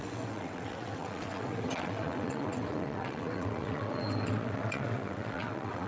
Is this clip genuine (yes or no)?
no